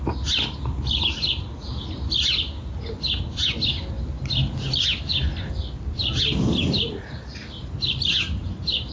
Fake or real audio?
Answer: real